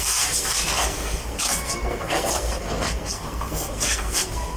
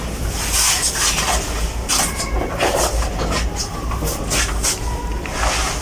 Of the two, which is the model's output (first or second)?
first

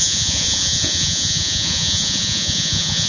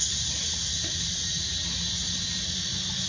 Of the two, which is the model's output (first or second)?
first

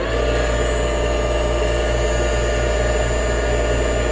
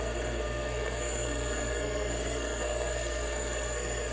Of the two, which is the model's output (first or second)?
second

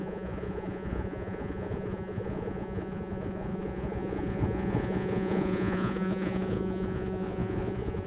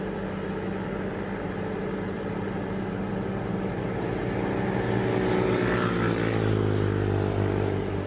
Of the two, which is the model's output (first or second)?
first